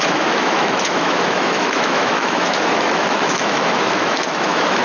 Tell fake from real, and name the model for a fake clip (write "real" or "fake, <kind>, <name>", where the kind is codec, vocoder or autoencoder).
fake, autoencoder, DAC-VAE